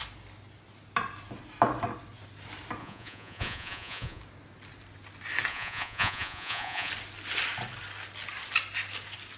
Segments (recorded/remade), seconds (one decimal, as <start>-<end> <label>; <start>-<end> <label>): 0.0-2.8 recorded; 2.8-4.2 remade; 4.2-5.5 recorded; 5.5-6.9 remade; 6.9-9.4 recorded